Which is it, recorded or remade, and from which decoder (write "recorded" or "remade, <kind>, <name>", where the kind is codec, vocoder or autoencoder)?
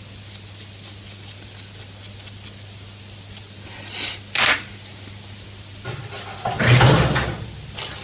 recorded